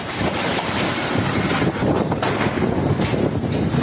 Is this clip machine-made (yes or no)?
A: no